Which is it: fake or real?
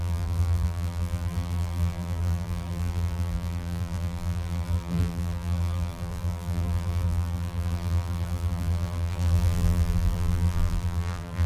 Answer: fake